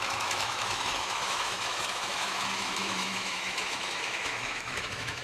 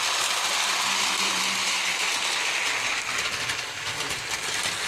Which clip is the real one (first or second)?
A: second